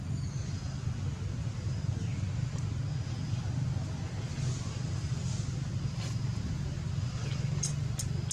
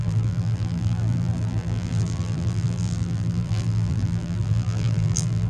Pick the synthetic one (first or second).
second